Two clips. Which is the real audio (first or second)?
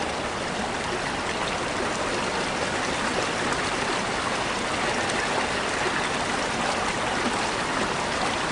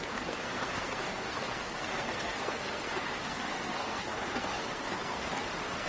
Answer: first